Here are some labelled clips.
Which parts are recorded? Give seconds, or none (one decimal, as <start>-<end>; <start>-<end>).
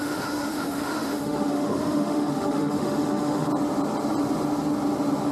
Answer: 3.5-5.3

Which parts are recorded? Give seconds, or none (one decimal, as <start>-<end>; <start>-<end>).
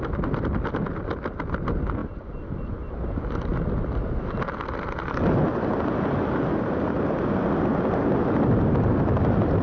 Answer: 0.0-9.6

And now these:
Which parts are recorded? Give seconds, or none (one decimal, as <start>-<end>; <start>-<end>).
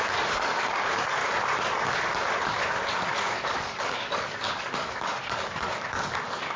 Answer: 1.2-2.9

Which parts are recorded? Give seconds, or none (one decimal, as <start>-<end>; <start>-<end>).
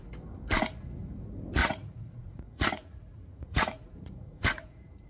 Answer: 0.0-1.6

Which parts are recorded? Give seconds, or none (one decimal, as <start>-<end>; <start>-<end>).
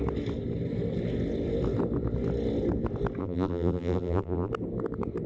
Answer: 0.0-3.2; 4.5-5.3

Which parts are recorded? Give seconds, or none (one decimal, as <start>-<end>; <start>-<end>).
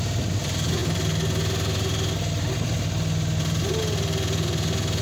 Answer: 0.0-5.0